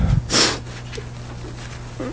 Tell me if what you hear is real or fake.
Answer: real